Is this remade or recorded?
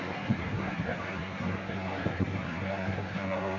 remade